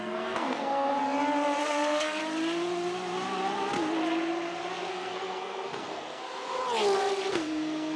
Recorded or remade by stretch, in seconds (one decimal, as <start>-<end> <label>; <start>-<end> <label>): 0.0-0.9 remade; 0.9-1.6 recorded; 1.6-2.2 remade; 2.2-4.9 recorded; 4.9-6.2 remade; 6.2-7.3 recorded; 7.3-8.0 remade